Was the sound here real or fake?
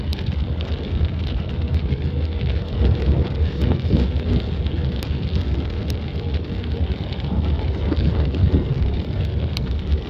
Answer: fake